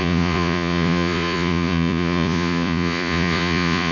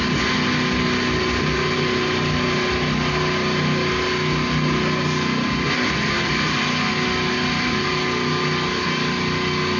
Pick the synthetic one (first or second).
first